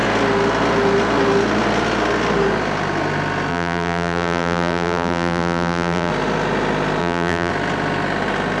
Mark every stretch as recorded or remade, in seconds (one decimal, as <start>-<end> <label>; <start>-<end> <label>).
0.0-3.5 recorded; 3.5-6.1 remade; 6.1-7.0 recorded; 7.0-7.5 remade; 7.5-8.6 recorded